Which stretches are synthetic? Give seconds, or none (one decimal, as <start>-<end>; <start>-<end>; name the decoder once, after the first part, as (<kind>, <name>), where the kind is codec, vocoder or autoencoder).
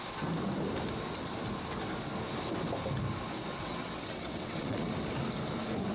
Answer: 3.5-4.9 (vocoder, WaveNeXt)